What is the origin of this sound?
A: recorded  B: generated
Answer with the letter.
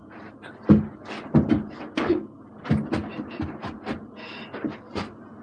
A